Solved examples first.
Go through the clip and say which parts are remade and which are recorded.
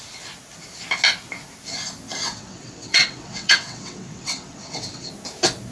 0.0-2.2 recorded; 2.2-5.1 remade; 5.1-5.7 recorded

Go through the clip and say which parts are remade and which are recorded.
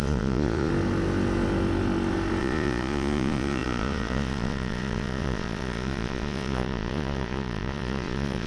0.0-0.7 remade; 0.7-2.4 recorded; 2.4-8.5 remade